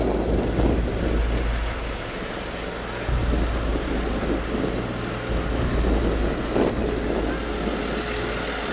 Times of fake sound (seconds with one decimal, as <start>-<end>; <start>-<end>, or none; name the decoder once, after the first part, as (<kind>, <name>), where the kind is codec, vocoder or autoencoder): none